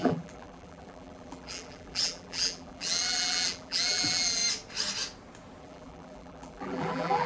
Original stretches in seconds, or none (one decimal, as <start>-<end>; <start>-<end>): 4.4-5.6